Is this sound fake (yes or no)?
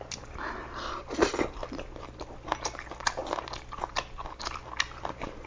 no